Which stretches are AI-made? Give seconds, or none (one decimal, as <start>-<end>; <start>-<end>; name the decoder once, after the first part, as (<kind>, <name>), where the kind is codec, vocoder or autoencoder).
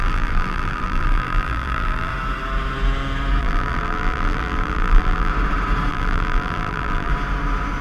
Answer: 0.0-2.1 (vocoder, BigVGAN v2); 3.4-5.3; 5.9-7.1